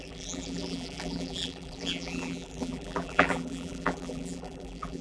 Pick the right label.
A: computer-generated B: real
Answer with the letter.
A